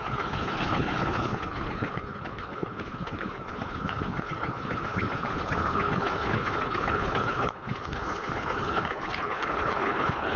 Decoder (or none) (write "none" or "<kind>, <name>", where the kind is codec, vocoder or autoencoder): codec, HILCodec